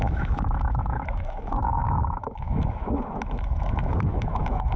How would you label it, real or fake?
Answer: fake